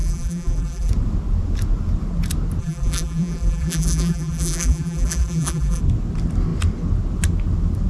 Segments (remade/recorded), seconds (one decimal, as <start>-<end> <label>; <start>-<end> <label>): 0.0-0.9 remade; 0.9-2.6 recorded; 2.6-5.8 remade; 5.8-7.9 recorded

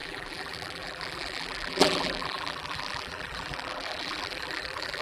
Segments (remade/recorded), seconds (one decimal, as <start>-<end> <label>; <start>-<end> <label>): 0.0-5.0 remade

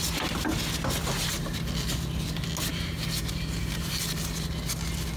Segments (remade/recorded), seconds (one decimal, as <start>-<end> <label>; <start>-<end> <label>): 0.0-2.7 recorded; 2.7-3.9 remade; 3.9-5.2 recorded

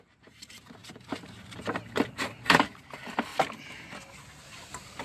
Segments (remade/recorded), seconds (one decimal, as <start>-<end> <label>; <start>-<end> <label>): 0.0-3.3 remade; 3.3-4.4 recorded; 4.4-5.0 remade

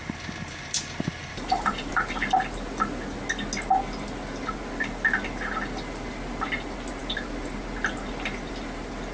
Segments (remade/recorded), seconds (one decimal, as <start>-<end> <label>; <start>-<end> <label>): 0.0-1.9 remade; 1.9-9.1 recorded